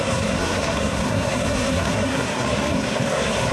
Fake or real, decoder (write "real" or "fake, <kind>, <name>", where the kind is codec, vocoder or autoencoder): fake, codec, SNAC